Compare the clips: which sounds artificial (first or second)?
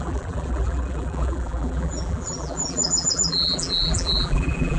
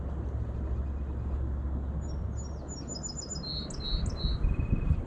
first